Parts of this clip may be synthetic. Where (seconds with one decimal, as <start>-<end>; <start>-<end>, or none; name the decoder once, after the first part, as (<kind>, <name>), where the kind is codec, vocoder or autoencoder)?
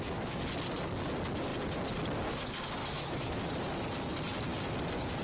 2.8-3.4 (autoencoder, DAC-VAE)